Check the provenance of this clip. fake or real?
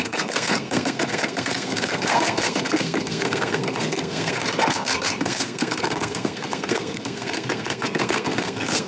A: fake